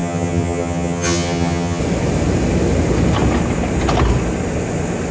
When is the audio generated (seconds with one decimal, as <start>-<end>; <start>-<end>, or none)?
0.0-1.8